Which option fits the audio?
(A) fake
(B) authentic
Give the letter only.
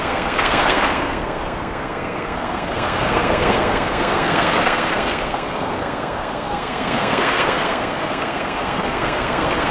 A